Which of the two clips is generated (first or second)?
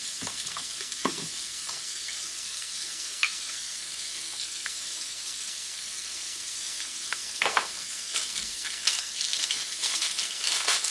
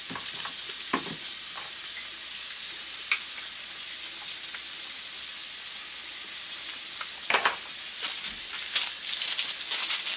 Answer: first